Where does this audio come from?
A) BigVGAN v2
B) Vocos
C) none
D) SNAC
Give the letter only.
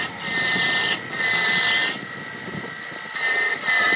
C